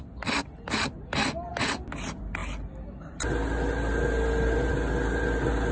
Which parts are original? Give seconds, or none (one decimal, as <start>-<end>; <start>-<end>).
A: 0.0-5.7